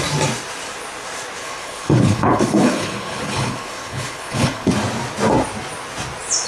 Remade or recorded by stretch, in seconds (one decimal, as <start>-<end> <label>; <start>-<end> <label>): 0.0-1.4 recorded; 1.4-4.7 remade; 4.7-6.5 recorded

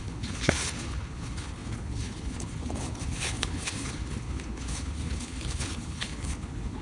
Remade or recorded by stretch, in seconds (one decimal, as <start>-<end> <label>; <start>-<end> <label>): 0.0-6.8 remade

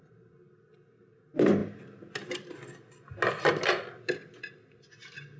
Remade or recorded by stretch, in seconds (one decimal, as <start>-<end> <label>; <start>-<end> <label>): 0.0-5.4 recorded

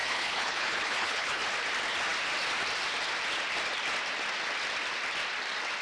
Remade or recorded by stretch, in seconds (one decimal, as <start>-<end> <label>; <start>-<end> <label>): 0.0-1.4 remade; 1.4-5.8 recorded